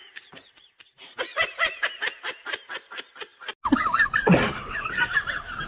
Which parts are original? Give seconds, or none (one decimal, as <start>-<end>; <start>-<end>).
0.0-5.7